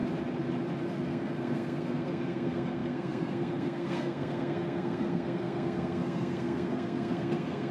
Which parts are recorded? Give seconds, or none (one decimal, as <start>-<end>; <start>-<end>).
0.0-0.9